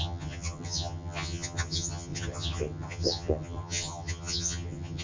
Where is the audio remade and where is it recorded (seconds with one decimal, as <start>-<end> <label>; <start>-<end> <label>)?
0.0-5.0 remade